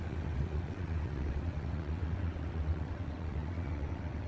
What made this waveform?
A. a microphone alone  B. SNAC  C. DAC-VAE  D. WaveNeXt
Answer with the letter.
D